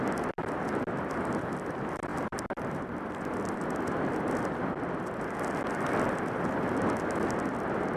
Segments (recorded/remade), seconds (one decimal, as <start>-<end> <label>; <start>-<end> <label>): 0.0-8.0 recorded